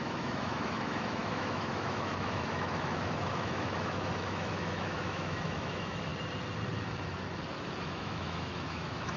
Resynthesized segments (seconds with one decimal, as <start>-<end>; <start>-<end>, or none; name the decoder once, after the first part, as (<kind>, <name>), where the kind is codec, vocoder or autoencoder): 0.0-6.1 (autoencoder, DAC-VAE); 7.8-9.2